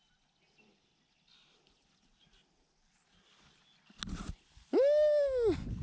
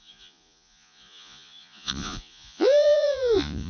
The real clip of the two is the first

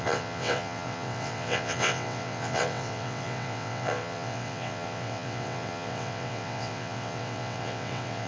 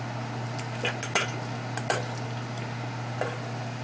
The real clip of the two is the second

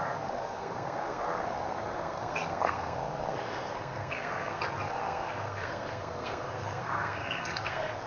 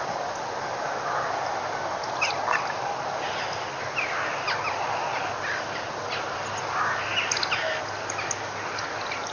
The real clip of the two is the second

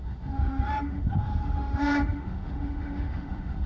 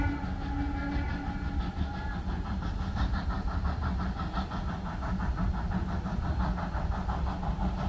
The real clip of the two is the second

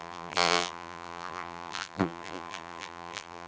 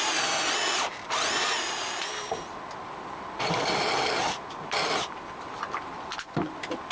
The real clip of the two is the second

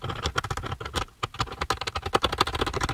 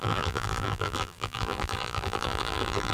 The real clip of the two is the first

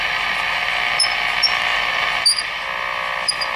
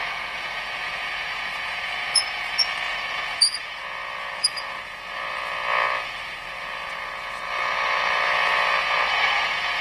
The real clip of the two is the first